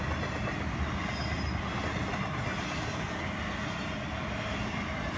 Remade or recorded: recorded